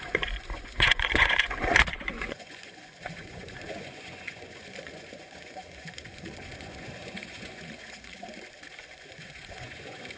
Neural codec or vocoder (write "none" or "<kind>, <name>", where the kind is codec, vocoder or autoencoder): vocoder, Vocos